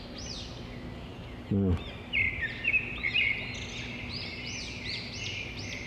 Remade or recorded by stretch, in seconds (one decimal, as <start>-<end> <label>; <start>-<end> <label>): 0.0-5.9 recorded